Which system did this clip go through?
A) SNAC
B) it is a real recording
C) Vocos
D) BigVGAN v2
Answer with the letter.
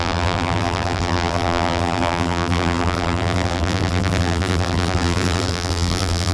D